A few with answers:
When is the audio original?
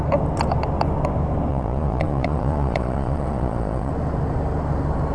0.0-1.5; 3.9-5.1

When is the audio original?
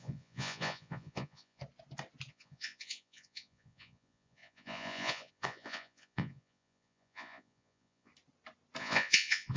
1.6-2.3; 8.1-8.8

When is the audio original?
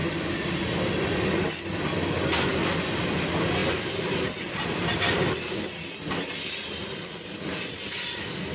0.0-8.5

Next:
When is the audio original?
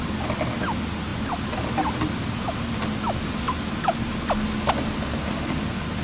0.0-6.0